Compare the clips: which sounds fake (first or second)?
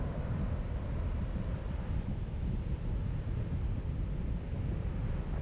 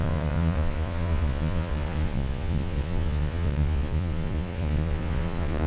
second